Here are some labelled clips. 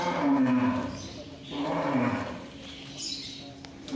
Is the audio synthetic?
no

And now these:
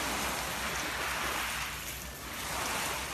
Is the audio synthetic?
no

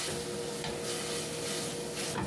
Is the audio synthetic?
no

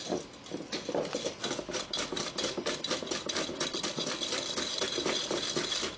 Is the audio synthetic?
no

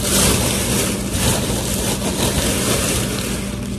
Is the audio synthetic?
no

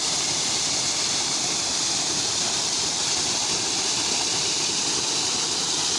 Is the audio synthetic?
yes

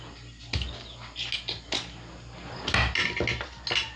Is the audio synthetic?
no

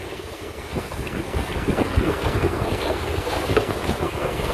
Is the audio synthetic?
yes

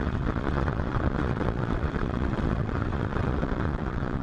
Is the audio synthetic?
yes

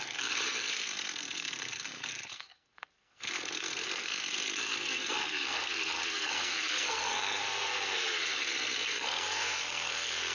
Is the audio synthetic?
yes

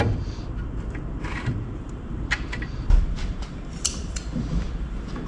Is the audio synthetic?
yes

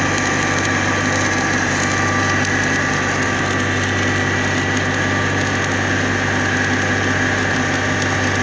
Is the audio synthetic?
no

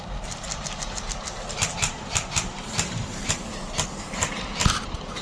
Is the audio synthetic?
yes